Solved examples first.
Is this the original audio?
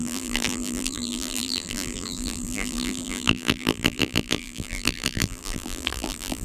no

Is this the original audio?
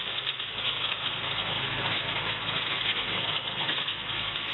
no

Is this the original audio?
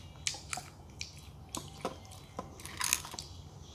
yes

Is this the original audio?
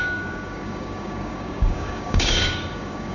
no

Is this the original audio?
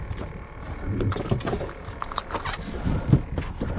yes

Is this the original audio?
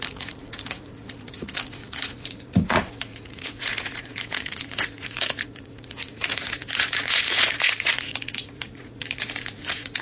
no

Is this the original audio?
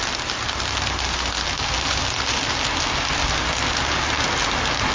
yes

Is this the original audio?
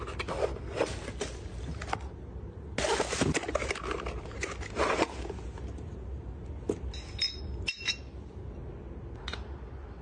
yes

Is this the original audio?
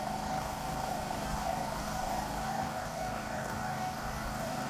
no